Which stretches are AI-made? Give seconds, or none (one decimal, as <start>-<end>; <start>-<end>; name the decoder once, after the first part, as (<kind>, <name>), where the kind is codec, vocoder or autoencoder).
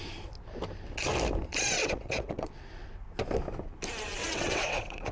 1.8-2.7 (vocoder, WaveNeXt); 4.2-5.1